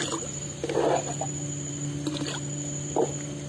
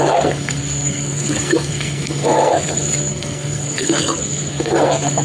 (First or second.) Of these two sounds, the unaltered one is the first